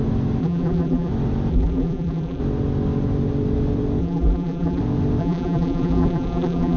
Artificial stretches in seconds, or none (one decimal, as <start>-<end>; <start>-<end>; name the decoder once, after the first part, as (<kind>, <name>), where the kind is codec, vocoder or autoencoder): 0.4-1.1 (vocoder, BigVGAN v2); 1.5-2.4; 4.0-4.8; 5.2-6.8